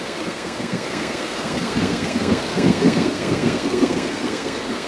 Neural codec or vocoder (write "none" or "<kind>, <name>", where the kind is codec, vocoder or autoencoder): codec, SNAC